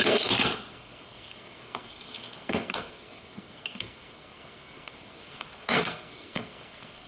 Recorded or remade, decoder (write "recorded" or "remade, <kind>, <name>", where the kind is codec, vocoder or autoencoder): remade, codec, SNAC